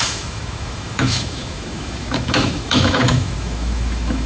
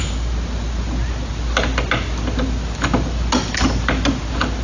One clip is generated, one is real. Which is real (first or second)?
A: second